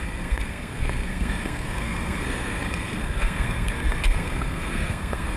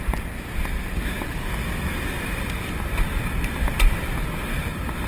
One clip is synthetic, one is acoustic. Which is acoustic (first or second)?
second